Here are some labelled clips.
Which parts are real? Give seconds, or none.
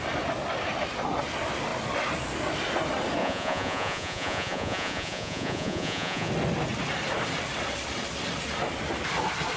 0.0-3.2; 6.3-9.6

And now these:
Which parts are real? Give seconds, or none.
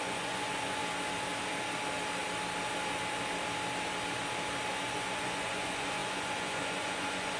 0.8-4.7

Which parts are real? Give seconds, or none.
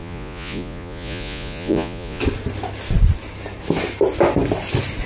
2.2-5.1